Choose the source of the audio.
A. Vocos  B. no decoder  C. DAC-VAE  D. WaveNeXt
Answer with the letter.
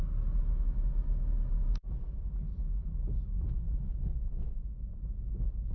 B